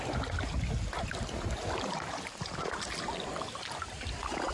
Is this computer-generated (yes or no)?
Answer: no